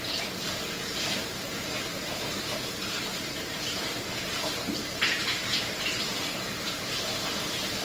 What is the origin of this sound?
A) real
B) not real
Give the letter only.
B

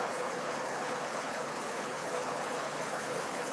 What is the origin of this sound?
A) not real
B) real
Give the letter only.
A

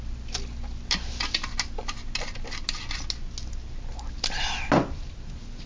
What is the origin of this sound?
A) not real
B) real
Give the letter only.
B